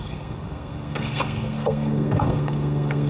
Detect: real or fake fake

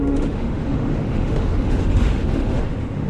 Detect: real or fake fake